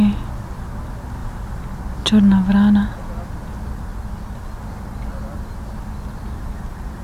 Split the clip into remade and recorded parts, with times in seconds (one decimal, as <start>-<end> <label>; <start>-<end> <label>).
0.0-1.2 recorded; 1.2-1.8 remade; 1.8-3.9 recorded; 3.9-4.6 remade; 4.6-7.0 recorded